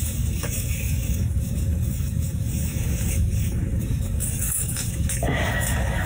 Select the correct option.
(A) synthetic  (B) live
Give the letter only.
A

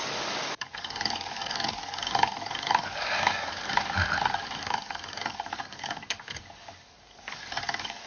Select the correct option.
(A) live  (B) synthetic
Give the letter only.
B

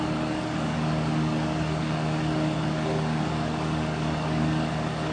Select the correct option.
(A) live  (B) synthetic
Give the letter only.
B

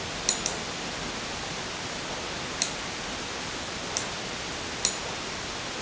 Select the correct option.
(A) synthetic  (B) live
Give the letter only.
B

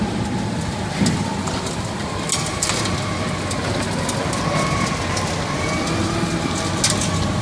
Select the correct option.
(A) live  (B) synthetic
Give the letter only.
A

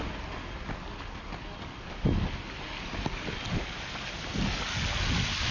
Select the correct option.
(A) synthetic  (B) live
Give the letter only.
B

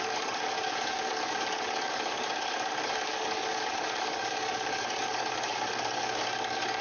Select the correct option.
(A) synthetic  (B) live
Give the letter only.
A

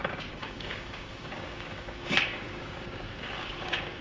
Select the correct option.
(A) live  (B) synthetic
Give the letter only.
B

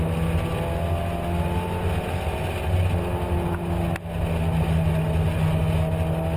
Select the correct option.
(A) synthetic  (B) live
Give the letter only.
B